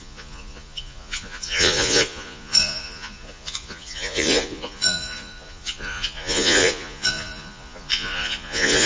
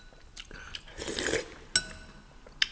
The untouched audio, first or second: second